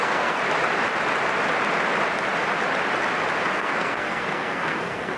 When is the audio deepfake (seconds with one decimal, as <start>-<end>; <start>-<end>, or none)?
0.0-0.4; 3.5-5.2